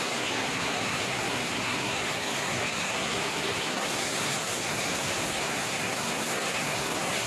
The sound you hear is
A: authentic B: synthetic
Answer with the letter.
B